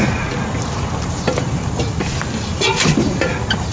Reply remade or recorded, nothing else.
recorded